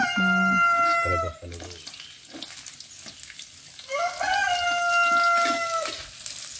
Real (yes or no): yes